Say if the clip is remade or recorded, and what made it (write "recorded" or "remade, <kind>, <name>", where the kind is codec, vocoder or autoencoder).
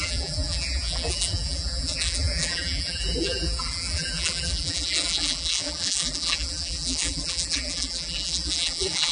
remade, vocoder, BigVGAN v2